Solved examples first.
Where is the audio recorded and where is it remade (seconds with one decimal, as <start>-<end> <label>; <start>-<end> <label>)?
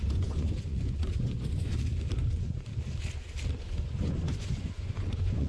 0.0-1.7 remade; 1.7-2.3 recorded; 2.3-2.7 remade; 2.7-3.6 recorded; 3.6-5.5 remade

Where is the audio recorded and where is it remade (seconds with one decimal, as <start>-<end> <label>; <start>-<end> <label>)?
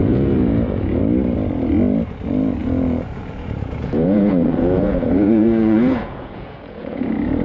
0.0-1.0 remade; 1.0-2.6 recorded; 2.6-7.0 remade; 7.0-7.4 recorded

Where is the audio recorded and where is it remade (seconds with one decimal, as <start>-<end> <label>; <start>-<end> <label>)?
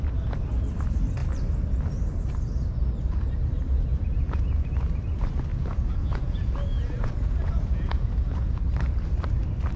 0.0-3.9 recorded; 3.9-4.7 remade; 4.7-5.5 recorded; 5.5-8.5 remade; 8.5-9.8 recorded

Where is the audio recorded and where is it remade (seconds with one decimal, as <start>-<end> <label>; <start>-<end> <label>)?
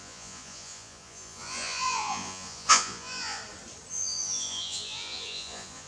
0.0-3.4 remade; 3.4-3.9 recorded; 3.9-5.9 remade